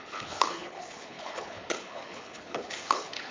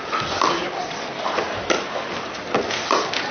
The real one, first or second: second